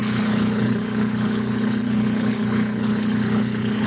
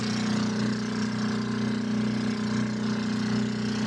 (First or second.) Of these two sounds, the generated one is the first